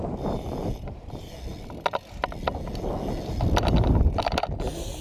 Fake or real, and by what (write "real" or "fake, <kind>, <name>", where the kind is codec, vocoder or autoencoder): real